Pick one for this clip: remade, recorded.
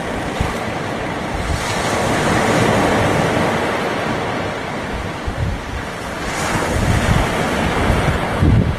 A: recorded